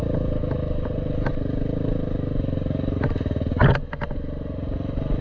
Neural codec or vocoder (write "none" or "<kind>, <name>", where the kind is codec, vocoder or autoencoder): none